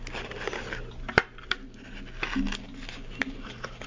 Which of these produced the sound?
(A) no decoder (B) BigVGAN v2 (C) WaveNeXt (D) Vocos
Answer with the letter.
A